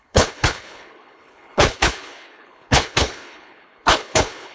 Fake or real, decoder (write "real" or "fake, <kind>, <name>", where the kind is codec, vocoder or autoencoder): fake, codec, HILCodec